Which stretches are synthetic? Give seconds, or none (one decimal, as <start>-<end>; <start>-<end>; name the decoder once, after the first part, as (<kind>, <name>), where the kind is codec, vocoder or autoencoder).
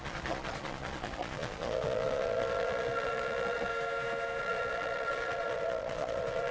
0.0-3.7 (vocoder, Vocos); 4.4-6.5